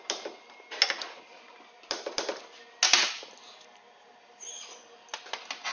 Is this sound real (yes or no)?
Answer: yes